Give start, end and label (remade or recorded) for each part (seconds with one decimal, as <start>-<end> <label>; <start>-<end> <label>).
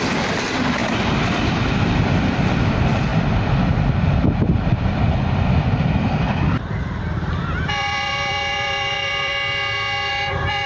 0.0-0.8 remade; 0.8-1.8 recorded; 1.8-9.3 remade; 9.3-10.1 recorded; 10.1-10.7 remade